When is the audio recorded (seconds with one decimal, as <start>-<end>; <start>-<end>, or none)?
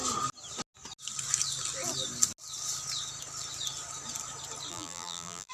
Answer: 0.0-4.7